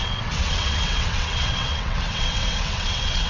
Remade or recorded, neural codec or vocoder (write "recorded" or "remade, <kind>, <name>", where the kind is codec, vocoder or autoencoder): remade, vocoder, WaveNeXt